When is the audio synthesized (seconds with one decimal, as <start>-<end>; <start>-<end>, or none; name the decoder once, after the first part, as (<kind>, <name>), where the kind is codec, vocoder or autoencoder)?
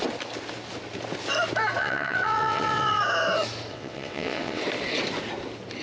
1.8-3.0 (vocoder, WaveNeXt); 3.7-4.6